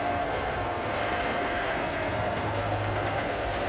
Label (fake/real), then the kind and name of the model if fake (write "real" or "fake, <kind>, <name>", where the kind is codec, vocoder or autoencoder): fake, codec, SNAC